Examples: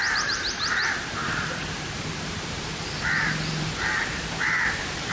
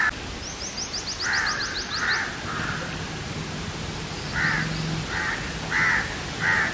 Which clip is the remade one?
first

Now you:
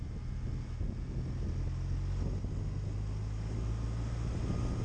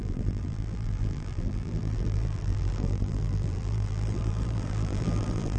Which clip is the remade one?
second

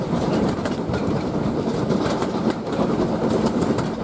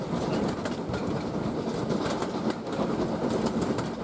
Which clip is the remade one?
first